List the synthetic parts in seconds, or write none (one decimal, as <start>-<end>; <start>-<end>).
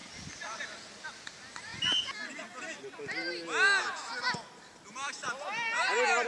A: none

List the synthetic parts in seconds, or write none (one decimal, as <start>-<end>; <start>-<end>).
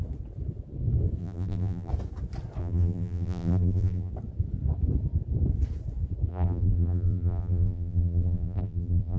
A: 1.2-1.9; 2.6-4.1; 6.3-9.2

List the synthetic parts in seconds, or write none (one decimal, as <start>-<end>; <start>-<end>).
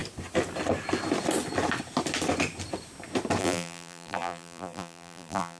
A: 3.4-5.6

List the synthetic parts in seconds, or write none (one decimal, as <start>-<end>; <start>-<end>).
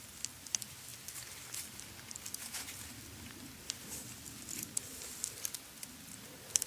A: none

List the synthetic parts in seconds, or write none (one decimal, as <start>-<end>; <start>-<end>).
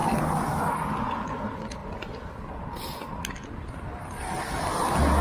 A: none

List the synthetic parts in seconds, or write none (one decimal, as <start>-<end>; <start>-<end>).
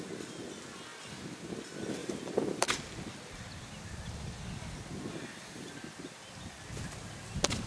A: 2.0-2.8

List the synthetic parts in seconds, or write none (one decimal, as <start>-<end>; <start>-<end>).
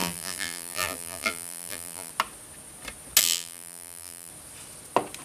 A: 0.0-2.1; 3.2-4.3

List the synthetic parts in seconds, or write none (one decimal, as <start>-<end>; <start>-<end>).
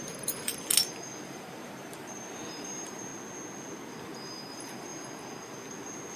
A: 0.0-0.5; 1.2-3.1; 4.0-4.9